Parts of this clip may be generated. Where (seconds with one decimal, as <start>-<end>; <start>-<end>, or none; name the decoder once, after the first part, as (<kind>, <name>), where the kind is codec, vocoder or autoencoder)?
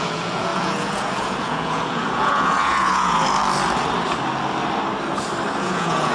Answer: 0.0-3.4 (vocoder, Vocos); 5.6-6.1